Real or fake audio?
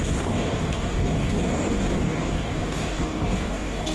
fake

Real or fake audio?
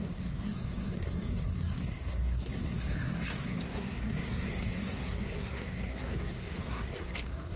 fake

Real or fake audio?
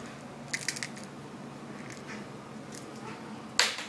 real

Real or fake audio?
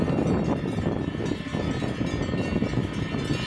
real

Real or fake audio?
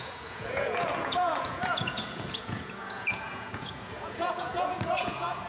fake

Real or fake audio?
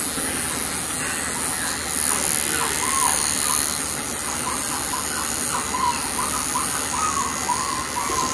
real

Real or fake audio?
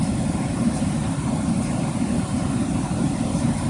fake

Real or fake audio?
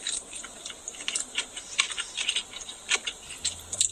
fake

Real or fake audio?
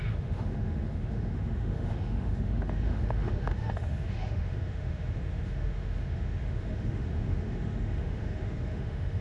fake